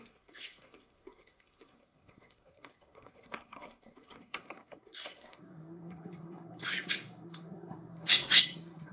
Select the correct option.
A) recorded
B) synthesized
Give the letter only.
B